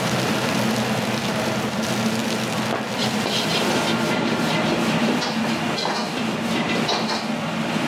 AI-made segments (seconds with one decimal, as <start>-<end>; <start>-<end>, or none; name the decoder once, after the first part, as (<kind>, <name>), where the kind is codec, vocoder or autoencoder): none